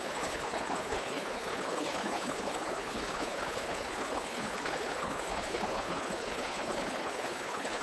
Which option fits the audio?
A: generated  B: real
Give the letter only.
A